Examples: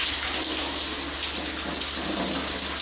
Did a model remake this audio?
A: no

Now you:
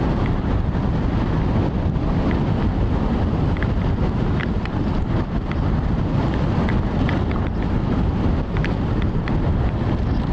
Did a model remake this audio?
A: no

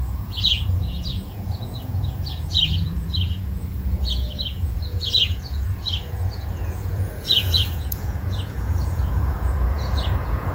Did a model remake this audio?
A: yes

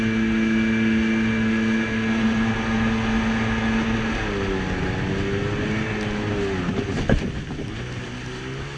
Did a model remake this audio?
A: no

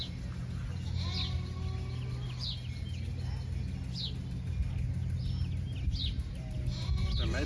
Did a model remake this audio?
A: no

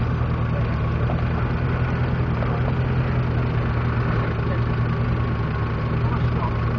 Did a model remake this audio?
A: no